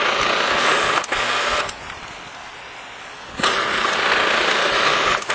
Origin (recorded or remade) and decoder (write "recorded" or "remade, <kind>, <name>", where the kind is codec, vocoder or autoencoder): recorded